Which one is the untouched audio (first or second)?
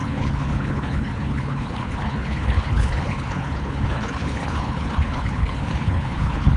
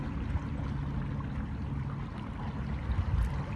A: second